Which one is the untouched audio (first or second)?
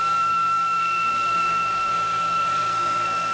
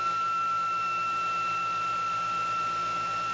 second